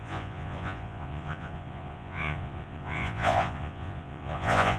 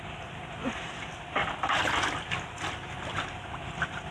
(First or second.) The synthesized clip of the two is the first